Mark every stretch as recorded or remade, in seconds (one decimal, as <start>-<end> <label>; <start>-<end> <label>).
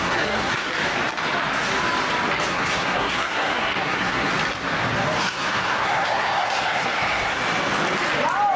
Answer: 0.0-0.7 remade; 0.7-2.5 recorded; 2.5-4.3 remade; 4.3-5.2 recorded; 5.2-7.4 remade; 7.4-8.6 recorded